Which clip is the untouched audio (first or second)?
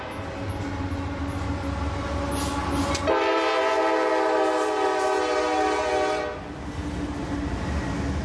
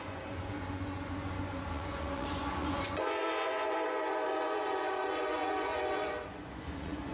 first